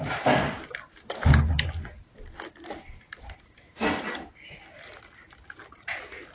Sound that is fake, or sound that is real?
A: real